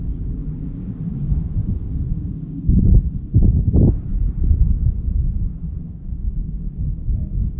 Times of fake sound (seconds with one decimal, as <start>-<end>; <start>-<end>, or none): 0.0-0.4; 1.1-4.1; 5.9-7.6